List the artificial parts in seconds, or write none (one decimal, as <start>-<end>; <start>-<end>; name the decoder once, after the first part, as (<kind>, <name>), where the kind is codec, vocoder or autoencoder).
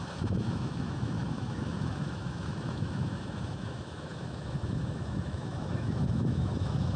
0.0-7.0 (autoencoder, DAC-VAE)